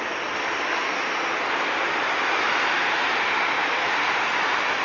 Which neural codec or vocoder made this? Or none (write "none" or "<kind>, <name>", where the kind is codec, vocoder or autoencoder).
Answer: vocoder, BigVGAN v2